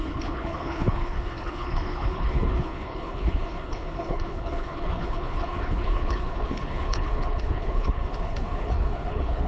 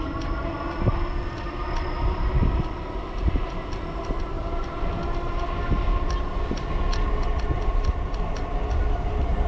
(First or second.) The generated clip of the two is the first